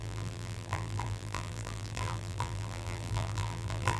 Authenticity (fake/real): fake